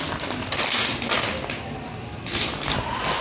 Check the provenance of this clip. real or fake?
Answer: real